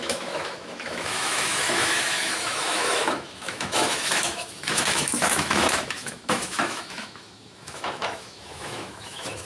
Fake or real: fake